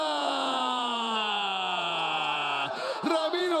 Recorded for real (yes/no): no